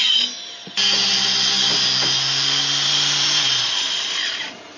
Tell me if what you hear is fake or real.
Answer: real